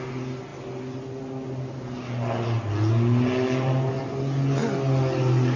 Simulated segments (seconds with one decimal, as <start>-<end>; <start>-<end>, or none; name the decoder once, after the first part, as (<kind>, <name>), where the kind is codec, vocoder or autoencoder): none